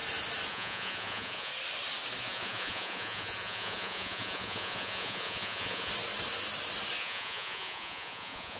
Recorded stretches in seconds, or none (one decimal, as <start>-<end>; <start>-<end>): 0.0-0.5; 1.5-2.2; 5.9-7.0